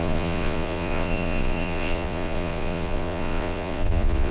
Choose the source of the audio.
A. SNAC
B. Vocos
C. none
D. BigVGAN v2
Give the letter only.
B